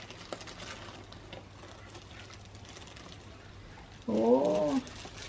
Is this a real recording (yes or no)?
yes